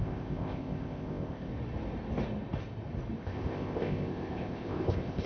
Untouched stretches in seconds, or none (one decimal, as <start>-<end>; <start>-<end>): 1.5-3.2